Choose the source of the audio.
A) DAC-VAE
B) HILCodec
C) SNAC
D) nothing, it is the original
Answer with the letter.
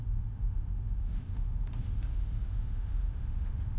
A